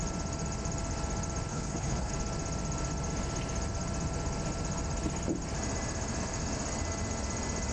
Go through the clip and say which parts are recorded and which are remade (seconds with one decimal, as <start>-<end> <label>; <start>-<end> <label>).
0.0-1.5 recorded; 1.5-2.1 remade; 2.1-7.7 recorded